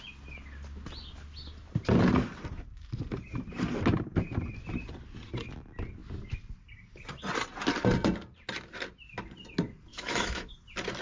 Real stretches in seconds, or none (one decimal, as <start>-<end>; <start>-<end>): 0.0-9.9; 10.5-11.0